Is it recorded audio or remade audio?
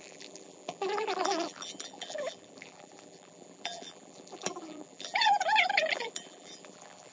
remade